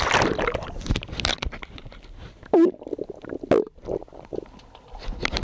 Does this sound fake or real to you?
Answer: real